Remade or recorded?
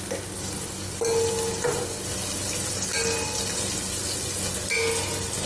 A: recorded